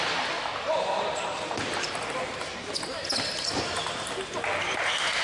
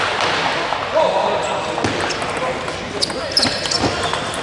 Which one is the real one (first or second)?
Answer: second